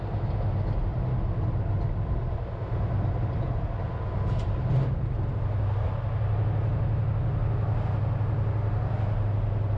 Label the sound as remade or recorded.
recorded